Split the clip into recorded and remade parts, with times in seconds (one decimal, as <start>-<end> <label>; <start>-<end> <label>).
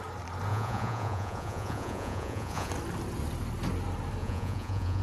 0.0-0.5 recorded; 0.5-2.7 remade; 2.7-4.2 recorded; 4.2-5.0 remade